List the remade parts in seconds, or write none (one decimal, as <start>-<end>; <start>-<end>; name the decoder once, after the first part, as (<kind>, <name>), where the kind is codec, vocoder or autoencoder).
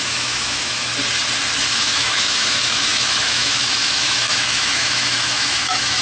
0.0-0.9 (autoencoder, DAC-VAE); 1.7-6.0